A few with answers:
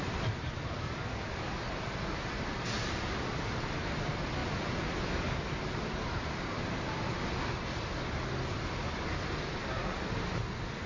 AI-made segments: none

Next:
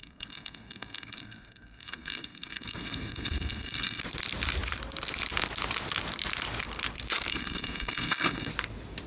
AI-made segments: 0.0-4.0 (codec, SNAC); 7.3-8.5

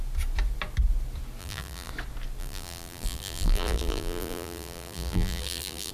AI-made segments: 1.4-1.9 (vocoder, BigVGAN v2); 2.4-5.9